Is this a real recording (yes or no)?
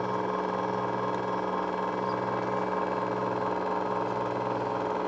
yes